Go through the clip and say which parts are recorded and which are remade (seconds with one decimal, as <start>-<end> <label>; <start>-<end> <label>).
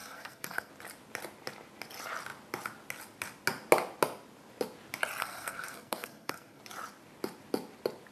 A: 0.0-0.7 remade; 0.7-5.2 recorded; 5.2-6.6 remade; 6.6-8.1 recorded